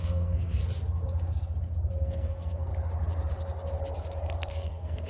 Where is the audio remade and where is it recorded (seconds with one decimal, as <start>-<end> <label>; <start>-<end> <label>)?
0.0-0.6 remade; 0.6-1.9 recorded; 1.9-2.7 remade; 2.7-4.5 recorded; 4.5-5.1 remade